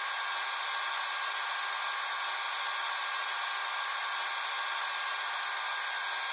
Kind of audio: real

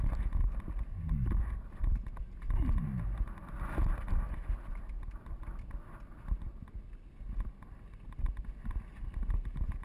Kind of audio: real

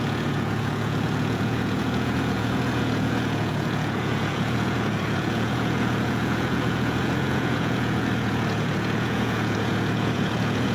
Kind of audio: fake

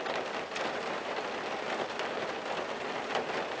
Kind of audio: real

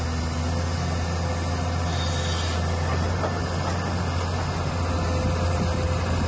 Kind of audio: real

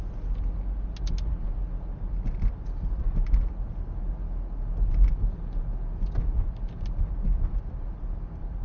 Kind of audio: real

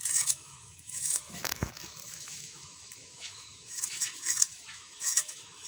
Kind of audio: fake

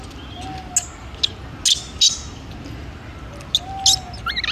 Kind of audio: real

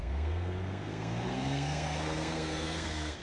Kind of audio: fake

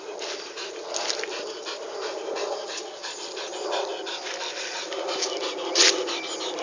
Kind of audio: real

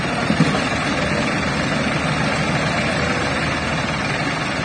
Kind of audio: real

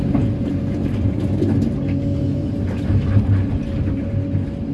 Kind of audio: real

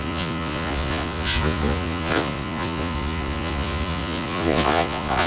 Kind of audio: fake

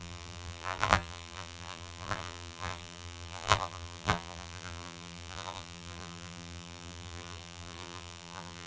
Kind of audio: fake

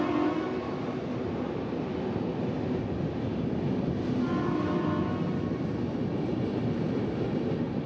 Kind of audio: real